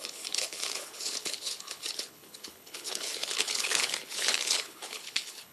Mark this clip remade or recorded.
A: remade